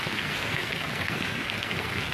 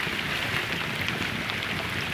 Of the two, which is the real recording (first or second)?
second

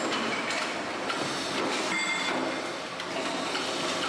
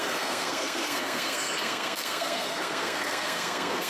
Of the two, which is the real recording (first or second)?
first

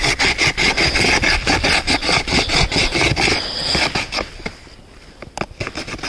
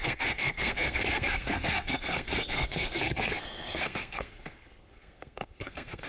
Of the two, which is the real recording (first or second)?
first